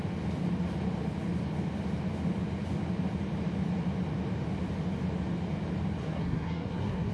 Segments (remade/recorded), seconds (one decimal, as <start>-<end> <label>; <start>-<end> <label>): 0.0-6.0 recorded; 6.0-7.1 remade